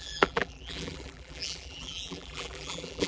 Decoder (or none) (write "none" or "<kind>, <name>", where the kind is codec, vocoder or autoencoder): vocoder, BigVGAN v2